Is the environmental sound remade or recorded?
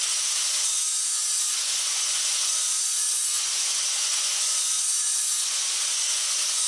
remade